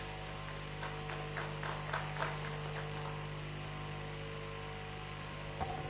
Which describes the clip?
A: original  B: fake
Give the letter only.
A